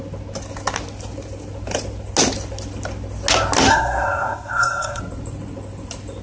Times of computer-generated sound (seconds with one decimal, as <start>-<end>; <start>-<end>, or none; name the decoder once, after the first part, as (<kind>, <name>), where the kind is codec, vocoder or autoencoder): 3.7-5.0 (codec, SNAC)